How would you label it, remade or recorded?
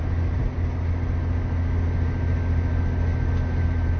recorded